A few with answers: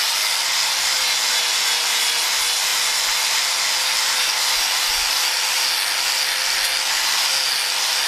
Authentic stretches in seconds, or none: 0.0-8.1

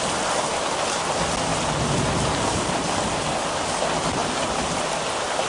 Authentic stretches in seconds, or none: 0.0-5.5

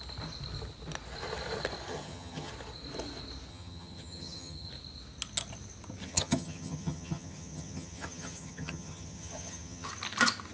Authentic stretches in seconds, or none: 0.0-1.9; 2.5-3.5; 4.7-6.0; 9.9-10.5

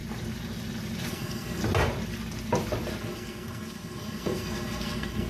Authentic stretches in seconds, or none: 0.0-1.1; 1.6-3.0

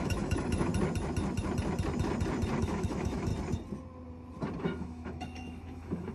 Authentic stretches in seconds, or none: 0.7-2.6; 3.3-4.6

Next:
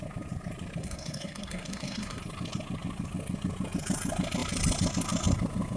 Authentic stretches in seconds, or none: 0.0-0.8; 2.2-5.8

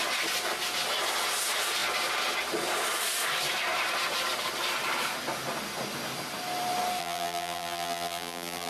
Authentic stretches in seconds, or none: 0.0-7.0

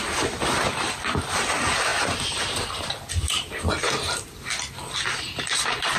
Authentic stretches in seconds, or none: 0.0-1.9; 3.0-6.0